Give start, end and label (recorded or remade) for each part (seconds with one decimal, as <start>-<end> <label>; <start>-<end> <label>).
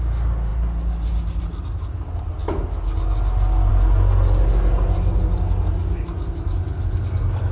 0.0-7.5 recorded